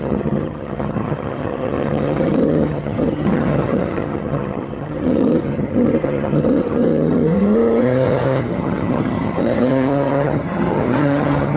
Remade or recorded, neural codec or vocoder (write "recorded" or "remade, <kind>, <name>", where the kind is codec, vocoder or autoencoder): remade, vocoder, HiFi-GAN